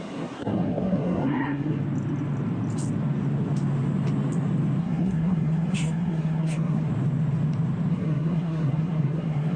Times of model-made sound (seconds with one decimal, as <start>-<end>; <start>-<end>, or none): 0.0-1.8; 4.8-6.9; 7.9-9.6